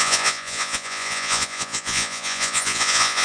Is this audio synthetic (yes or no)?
yes